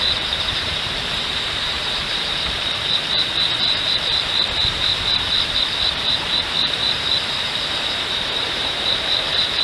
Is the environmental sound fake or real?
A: fake